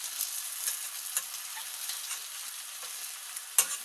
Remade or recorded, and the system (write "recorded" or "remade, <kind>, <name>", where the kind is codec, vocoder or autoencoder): recorded